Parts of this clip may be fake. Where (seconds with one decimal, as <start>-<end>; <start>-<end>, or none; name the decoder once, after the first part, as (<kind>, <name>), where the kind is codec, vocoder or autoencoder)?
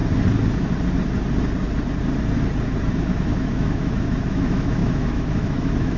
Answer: 2.9-6.0 (autoencoder, DAC-VAE)